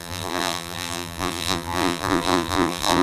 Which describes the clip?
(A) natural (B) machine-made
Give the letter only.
B